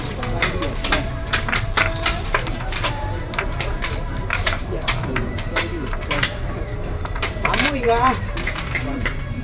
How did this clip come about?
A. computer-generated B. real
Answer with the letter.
A